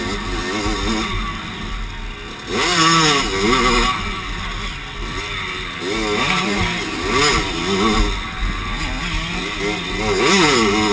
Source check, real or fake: real